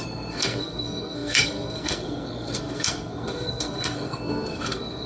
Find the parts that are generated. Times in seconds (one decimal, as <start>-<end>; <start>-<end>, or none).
0.0-5.1